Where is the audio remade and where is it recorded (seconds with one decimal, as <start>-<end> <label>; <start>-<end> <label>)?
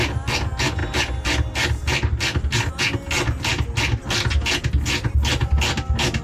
0.0-6.2 recorded